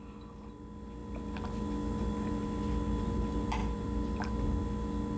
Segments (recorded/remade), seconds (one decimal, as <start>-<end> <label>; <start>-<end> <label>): 0.0-3.6 recorded; 3.6-4.3 remade; 4.3-5.2 recorded